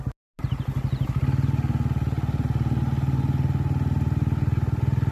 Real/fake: real